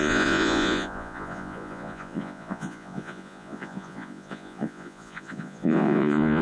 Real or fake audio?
fake